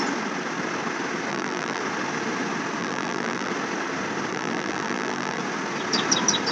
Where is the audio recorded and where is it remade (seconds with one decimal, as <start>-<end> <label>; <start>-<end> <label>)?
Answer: 0.0-1.3 recorded; 1.3-1.8 remade; 1.8-2.8 recorded; 2.8-3.5 remade; 3.5-4.3 recorded; 4.3-5.4 remade; 5.4-6.5 recorded

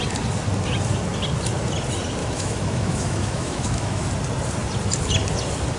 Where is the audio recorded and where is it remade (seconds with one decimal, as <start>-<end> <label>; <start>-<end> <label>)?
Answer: 0.0-2.2 recorded; 2.2-4.1 remade; 4.1-5.8 recorded